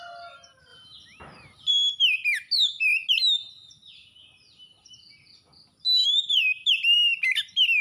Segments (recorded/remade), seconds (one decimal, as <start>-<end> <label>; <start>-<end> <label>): 0.0-0.7 recorded; 0.7-1.7 remade; 1.7-6.0 recorded; 6.0-7.2 remade; 7.2-7.8 recorded